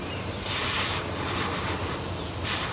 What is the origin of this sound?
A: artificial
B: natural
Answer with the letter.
A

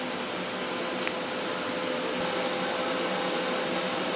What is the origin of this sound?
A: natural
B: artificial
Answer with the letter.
A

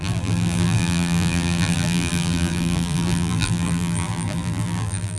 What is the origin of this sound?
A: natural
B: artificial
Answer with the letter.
B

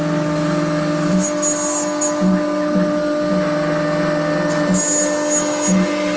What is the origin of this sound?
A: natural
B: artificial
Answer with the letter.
A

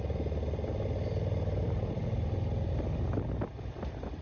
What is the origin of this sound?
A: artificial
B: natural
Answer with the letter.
A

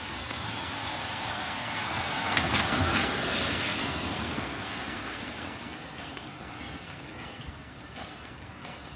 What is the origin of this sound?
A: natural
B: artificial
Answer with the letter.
B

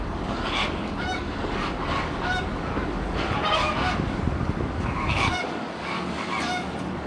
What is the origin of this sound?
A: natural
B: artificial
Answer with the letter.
B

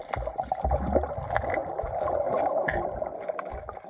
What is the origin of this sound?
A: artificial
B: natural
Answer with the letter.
B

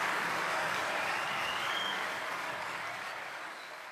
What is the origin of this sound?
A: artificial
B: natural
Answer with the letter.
A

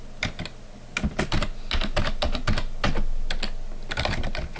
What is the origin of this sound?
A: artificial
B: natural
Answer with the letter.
B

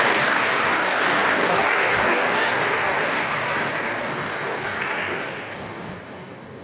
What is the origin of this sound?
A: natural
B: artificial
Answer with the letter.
B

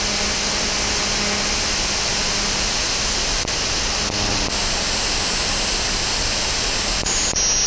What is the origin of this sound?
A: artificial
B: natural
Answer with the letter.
B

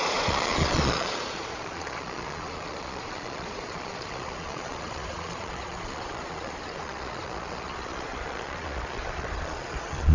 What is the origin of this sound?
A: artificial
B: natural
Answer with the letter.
A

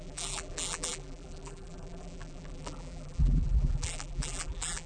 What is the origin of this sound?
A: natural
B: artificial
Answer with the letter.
B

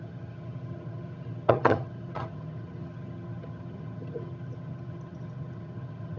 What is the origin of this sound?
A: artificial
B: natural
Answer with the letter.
A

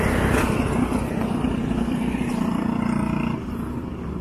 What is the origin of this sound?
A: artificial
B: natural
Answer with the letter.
B